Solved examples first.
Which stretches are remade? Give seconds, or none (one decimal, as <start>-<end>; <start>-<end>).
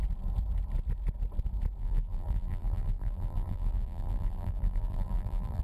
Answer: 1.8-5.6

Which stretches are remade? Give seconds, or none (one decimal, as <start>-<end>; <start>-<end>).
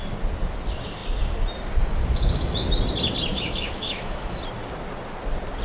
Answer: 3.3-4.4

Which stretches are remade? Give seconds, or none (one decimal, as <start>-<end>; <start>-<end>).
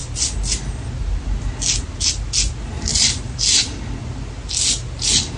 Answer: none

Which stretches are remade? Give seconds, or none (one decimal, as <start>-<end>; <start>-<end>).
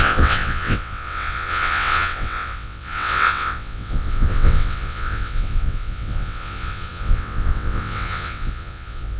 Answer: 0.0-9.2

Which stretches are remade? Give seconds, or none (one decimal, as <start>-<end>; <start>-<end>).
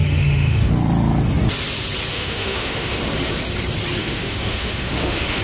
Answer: 0.0-0.7; 2.1-3.0; 4.0-5.4